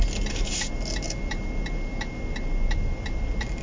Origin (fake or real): real